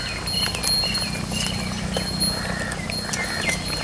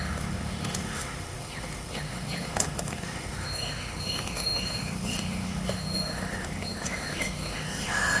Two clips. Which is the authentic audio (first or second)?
first